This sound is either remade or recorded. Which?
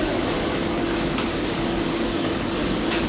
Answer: remade